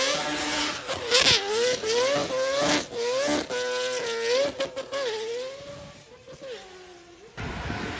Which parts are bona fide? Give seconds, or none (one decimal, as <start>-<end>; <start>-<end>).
0.0-8.0